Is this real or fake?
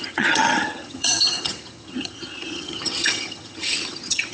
fake